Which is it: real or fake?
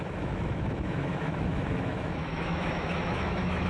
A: fake